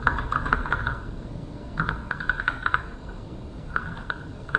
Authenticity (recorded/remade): remade